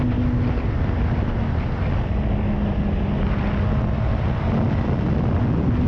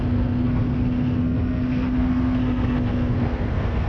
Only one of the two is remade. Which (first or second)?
second